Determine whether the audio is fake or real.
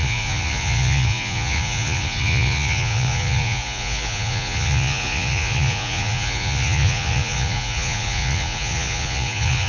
fake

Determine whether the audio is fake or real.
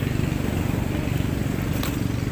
real